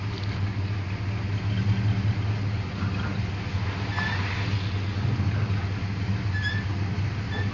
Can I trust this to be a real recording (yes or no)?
yes